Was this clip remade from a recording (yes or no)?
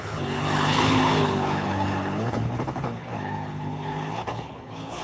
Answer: yes